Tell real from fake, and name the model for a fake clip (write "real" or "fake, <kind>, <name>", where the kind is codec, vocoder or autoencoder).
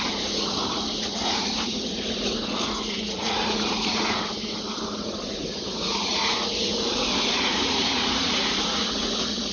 fake, vocoder, Vocos